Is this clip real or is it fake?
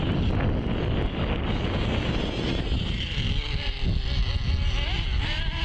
real